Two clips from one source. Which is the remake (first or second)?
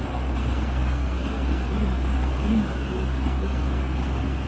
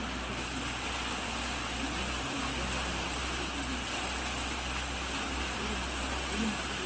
first